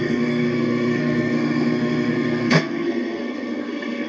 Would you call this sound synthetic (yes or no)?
yes